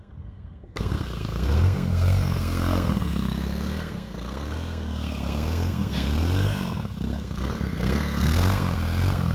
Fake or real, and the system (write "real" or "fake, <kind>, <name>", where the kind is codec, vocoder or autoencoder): fake, codec, SNAC